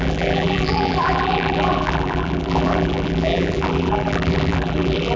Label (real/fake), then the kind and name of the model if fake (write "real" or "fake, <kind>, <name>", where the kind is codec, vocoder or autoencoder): fake, vocoder, BigVGAN v2